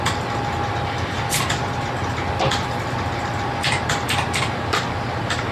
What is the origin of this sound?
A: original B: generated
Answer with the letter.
A